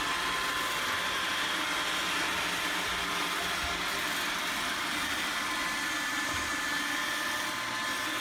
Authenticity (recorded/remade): recorded